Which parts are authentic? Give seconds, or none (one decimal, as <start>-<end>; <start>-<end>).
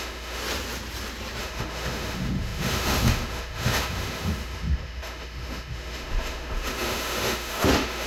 0.4-1.4